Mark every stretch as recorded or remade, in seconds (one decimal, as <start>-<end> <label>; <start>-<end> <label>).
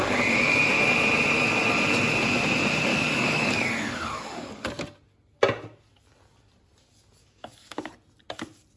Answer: 0.0-2.9 recorded; 2.9-4.7 remade; 4.7-7.2 recorded; 7.2-7.9 remade; 7.9-8.8 recorded